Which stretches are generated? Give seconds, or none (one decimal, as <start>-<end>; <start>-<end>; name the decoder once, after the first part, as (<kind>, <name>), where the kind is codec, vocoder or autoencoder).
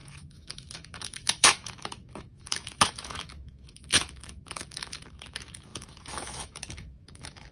0.0-7.5 (autoencoder, DAC-VAE)